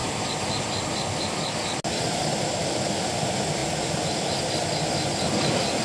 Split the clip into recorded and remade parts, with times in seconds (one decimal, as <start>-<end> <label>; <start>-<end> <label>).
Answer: 0.0-5.8 recorded